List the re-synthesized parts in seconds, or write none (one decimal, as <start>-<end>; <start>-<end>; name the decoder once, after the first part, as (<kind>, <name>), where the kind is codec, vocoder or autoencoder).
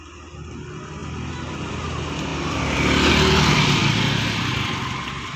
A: 2.3-3.1 (vocoder, BigVGAN v2)